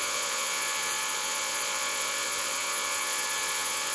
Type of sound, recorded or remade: remade